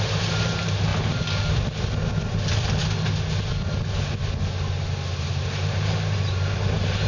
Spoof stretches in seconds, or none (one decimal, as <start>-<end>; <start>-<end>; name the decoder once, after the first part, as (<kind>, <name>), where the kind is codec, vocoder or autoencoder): 0.0-0.9 (vocoder, BigVGAN v2); 5.2-7.1